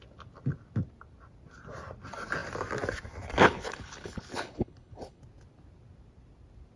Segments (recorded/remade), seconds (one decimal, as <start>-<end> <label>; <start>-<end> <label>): 0.0-3.4 recorded; 3.4-5.2 remade; 5.2-6.8 recorded